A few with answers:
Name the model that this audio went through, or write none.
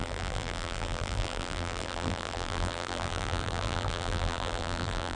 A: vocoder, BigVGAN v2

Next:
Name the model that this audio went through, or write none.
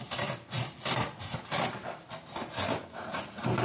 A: vocoder, BigVGAN v2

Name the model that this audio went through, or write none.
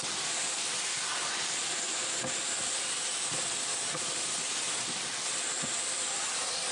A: none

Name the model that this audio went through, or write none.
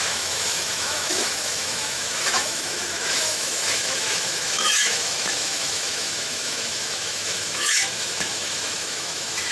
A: autoencoder, DAC-VAE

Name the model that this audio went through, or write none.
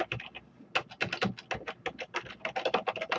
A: none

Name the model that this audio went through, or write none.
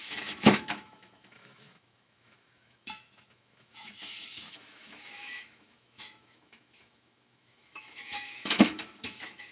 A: autoencoder, DAC-VAE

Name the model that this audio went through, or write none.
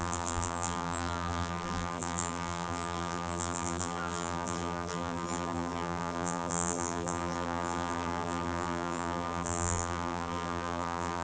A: vocoder, BigVGAN v2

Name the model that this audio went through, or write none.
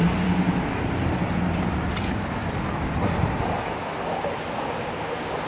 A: none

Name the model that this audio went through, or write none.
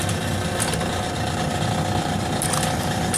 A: none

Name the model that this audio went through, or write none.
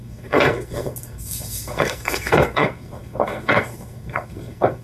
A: codec, SNAC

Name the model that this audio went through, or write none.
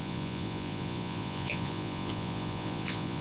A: vocoder, Vocos